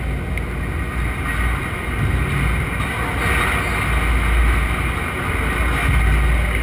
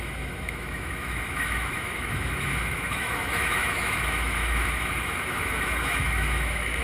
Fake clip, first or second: second